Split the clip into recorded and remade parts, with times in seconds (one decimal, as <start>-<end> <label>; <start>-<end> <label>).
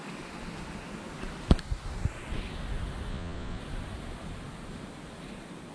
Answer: 0.0-3.1 recorded; 3.1-3.6 remade; 3.6-5.7 recorded